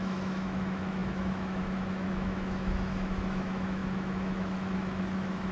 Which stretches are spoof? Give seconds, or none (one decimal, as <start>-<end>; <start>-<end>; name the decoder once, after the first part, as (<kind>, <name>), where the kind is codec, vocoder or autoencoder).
0.0-5.5 (autoencoder, DAC-VAE)